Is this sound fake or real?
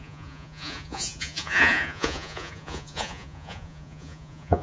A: fake